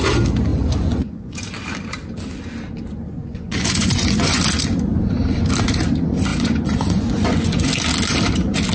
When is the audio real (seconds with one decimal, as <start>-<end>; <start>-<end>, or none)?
0.0-0.5; 1.5-3.2; 4.4-6.3; 7.7-8.7